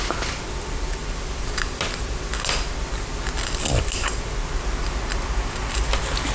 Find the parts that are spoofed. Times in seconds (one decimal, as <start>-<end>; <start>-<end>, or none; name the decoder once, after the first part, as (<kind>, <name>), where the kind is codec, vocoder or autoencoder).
none